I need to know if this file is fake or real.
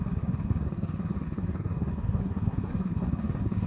fake